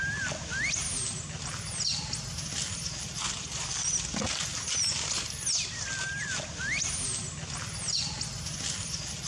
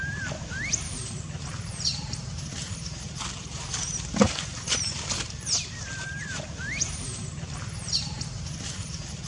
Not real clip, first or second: second